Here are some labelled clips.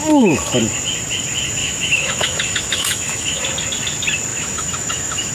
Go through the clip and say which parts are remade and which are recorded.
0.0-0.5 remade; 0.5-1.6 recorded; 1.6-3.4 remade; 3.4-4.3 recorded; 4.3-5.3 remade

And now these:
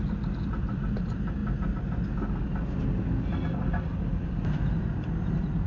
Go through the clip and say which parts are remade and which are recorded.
0.0-5.7 recorded

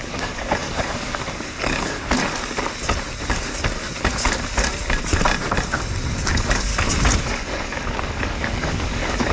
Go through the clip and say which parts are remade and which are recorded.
0.0-2.2 remade; 2.2-6.3 recorded; 6.3-6.7 remade; 6.7-7.2 recorded; 7.2-9.3 remade

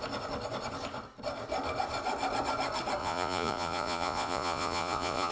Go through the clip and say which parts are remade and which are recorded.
0.0-3.0 recorded; 3.0-5.3 remade

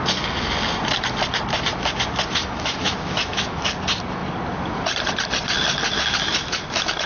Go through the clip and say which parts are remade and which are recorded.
0.0-2.4 recorded; 2.4-3.7 remade; 3.7-7.1 recorded

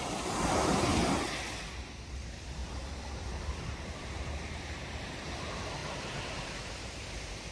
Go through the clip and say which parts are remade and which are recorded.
0.0-0.9 remade; 0.9-2.1 recorded; 2.1-2.6 remade; 2.6-3.6 recorded; 3.6-7.5 remade

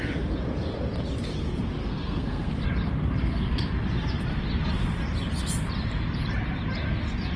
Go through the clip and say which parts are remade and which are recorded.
0.0-1.8 recorded; 1.8-2.5 remade; 2.5-7.4 recorded